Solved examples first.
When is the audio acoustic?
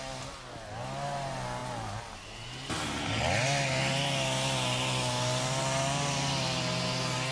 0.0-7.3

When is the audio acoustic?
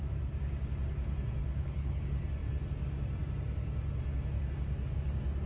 0.0-1.4; 2.0-5.5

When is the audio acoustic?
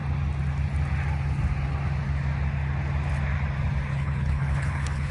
0.0-3.9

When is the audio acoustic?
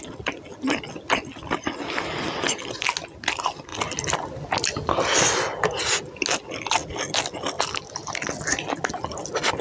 0.0-9.6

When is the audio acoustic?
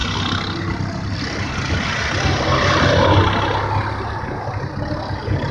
0.0-5.5